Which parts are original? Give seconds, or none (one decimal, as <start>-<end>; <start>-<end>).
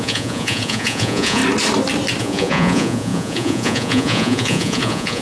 1.4-2.2